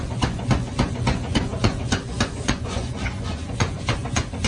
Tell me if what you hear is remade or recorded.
remade